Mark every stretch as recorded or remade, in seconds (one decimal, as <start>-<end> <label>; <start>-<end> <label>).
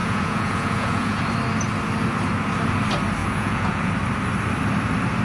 0.0-1.2 remade; 1.2-3.2 recorded; 3.2-3.9 remade; 3.9-5.2 recorded